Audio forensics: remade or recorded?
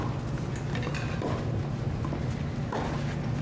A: recorded